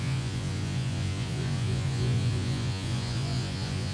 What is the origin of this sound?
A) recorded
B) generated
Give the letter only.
B